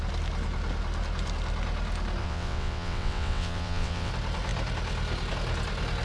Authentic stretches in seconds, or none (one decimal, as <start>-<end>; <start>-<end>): 0.0-2.2; 4.1-6.0